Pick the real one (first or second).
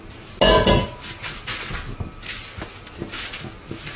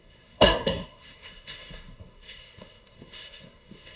first